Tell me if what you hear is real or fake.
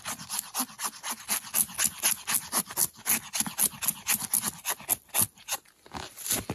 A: real